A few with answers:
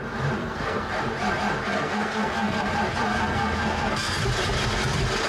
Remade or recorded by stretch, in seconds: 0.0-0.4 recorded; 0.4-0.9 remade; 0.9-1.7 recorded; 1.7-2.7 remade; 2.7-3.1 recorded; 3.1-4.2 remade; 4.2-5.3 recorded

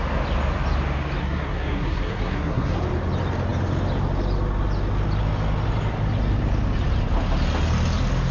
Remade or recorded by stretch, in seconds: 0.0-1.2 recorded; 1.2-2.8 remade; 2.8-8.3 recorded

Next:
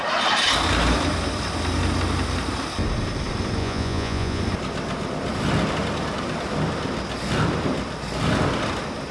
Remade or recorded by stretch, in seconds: 0.0-3.6 recorded; 3.6-4.4 remade; 4.4-9.1 recorded

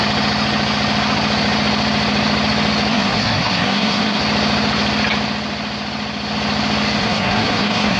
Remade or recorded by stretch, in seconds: 0.0-2.9 recorded; 2.9-4.2 remade; 4.2-7.0 recorded; 7.0-8.0 remade